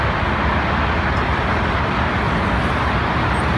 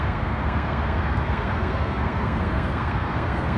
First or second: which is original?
first